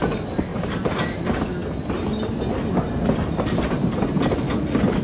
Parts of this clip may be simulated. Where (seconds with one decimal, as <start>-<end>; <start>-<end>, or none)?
0.5-1.2